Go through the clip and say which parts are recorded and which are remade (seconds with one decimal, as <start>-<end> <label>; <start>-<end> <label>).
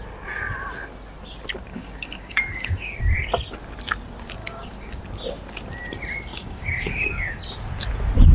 0.0-1.7 recorded; 1.7-3.0 remade; 3.0-4.4 recorded; 4.4-5.0 remade; 5.0-6.3 recorded; 6.3-7.4 remade; 7.4-8.3 recorded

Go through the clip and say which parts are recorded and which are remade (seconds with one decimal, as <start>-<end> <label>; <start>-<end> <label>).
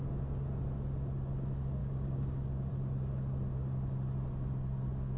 0.0-1.8 recorded; 1.8-2.7 remade; 2.7-5.2 recorded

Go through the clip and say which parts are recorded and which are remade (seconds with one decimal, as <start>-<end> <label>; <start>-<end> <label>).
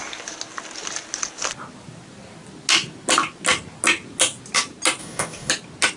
0.0-5.0 recorded; 5.0-5.5 remade; 5.5-6.0 recorded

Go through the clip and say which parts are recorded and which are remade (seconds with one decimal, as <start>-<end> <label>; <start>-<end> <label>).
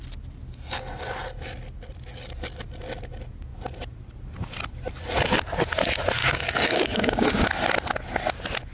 0.0-6.2 recorded; 6.2-7.5 remade; 7.5-8.7 recorded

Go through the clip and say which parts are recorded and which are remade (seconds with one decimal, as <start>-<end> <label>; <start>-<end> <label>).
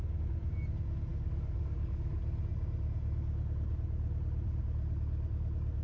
0.0-1.1 recorded; 1.1-2.1 remade; 2.1-5.8 recorded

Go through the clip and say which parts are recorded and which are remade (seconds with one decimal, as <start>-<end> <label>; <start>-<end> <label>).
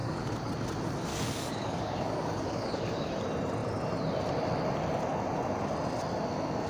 0.0-0.5 remade; 0.5-1.1 recorded; 1.1-3.1 remade; 3.1-6.7 recorded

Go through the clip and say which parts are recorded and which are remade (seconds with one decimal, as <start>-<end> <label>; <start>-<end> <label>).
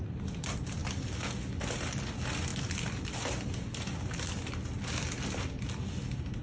0.0-6.4 recorded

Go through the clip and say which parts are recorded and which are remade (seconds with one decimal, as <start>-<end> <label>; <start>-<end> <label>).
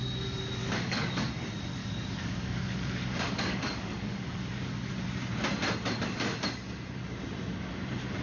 0.0-0.6 recorded; 0.6-1.3 remade; 1.3-1.8 recorded; 1.8-4.9 remade; 4.9-8.2 recorded